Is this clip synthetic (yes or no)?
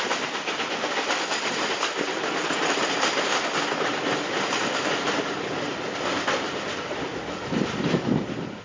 no